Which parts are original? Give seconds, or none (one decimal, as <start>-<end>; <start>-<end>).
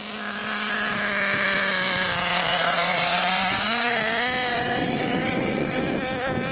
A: 0.0-2.5; 4.0-4.5; 5.8-6.5